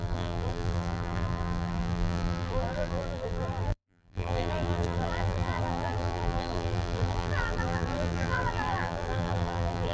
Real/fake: fake